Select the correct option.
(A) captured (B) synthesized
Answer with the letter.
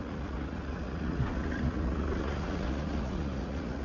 B